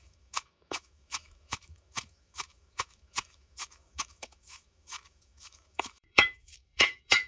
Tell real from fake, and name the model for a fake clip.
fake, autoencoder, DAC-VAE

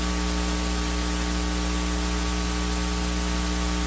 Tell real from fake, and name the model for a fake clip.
real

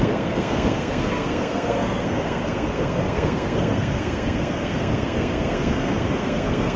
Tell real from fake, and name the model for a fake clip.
fake, codec, SNAC